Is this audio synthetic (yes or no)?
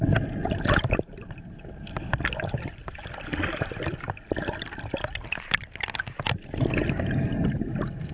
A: no